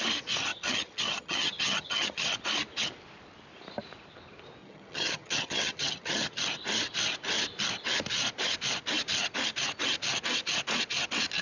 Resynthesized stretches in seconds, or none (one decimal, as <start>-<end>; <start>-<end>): 0.5-2.2; 4.6-6.4